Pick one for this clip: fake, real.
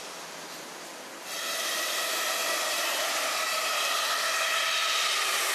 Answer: fake